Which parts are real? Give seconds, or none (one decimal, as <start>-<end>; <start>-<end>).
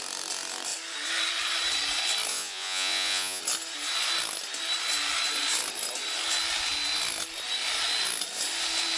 0.0-2.3; 3.4-9.0